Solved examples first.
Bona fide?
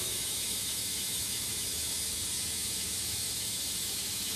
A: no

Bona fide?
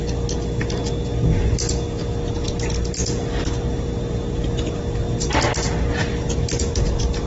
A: yes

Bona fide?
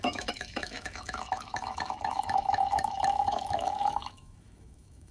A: no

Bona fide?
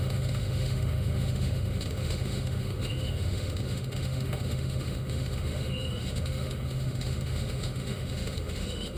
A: no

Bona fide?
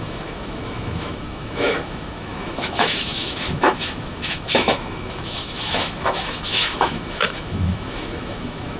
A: no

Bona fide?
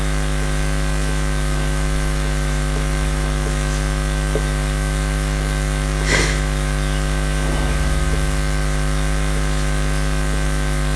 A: no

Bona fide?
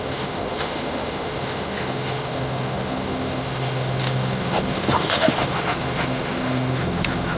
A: no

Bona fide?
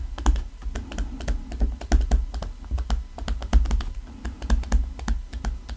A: yes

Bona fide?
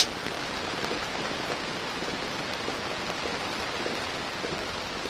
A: yes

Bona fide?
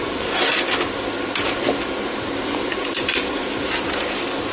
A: yes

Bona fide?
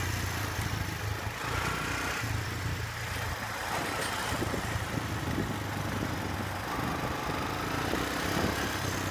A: yes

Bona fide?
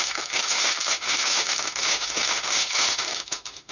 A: no